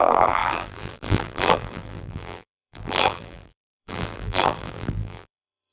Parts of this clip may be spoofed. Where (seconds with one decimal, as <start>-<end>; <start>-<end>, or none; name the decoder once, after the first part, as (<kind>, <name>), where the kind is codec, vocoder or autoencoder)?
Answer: 0.0-5.7 (vocoder, BigVGAN v2)